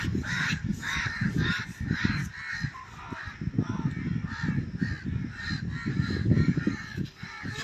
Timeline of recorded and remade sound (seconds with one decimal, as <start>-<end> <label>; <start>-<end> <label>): 0.0-2.2 remade; 2.2-5.9 recorded; 5.9-7.6 remade